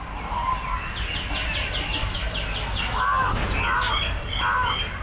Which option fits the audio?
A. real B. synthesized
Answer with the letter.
A